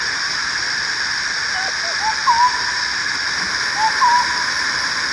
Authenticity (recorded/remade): recorded